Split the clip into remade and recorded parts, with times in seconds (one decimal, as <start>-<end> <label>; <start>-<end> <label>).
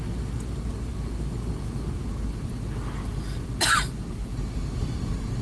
0.0-5.4 recorded